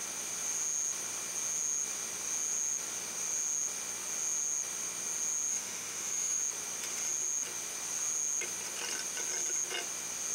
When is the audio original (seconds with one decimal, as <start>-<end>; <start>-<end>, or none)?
0.0-5.5; 6.4-10.3